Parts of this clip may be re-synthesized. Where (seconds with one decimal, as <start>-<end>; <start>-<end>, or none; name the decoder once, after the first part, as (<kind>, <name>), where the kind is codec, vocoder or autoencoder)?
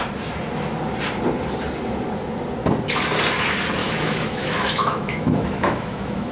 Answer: 3.8-6.3 (autoencoder, DAC-VAE)